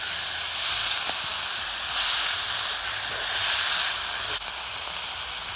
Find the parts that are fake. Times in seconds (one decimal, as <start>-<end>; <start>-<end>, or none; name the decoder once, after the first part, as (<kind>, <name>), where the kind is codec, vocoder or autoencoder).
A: none

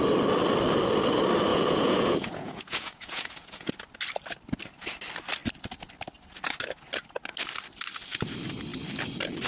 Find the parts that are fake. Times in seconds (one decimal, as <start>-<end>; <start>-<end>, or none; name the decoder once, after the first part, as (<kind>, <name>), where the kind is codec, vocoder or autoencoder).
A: 1.5-3.7 (vocoder, Vocos)

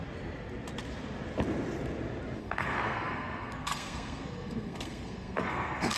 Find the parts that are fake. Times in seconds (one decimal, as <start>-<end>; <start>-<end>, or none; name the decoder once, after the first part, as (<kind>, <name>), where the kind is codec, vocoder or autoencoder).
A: 2.4-6.0 (codec, SNAC)

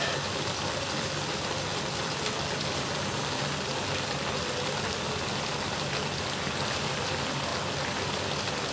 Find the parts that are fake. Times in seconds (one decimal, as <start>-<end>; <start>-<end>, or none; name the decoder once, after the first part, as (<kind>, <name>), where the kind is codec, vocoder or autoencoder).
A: none

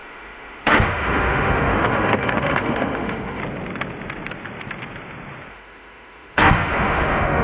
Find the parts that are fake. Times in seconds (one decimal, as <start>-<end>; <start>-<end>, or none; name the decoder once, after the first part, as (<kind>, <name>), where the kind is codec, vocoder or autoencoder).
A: 0.0-3.4 (autoencoder, DAC-VAE); 5.5-7.4

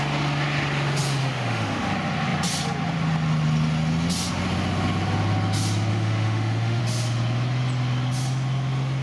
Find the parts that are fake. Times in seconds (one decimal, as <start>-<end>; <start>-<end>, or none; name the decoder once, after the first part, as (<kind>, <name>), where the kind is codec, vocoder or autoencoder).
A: 1.2-1.9 (autoencoder, DAC-VAE); 5.9-6.8